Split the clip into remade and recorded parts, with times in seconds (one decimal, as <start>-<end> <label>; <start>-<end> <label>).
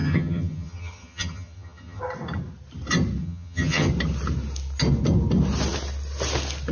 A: 0.0-2.0 remade; 2.0-3.2 recorded; 3.2-3.9 remade; 3.9-6.7 recorded